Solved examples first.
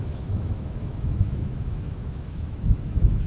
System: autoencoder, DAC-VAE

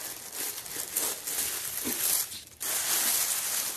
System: none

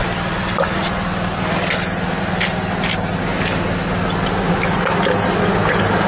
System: none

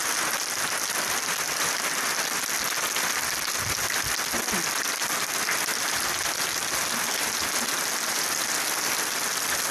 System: none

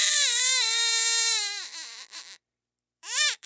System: vocoder, BigVGAN v2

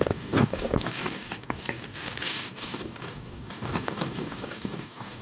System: codec, DAC